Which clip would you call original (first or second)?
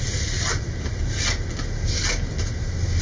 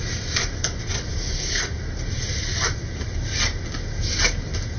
first